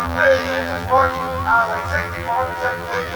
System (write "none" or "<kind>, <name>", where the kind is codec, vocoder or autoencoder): vocoder, BigVGAN v2